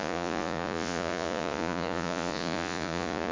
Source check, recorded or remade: remade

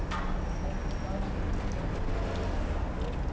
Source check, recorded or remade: recorded